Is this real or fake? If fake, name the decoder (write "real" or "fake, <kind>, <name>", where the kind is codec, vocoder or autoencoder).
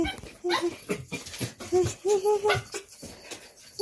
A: real